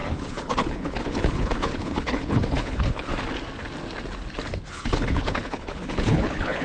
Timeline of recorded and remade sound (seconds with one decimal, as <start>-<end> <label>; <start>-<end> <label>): 0.0-3.1 remade; 3.1-4.7 recorded; 4.7-6.6 remade